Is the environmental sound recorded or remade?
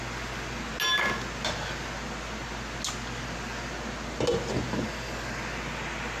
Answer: recorded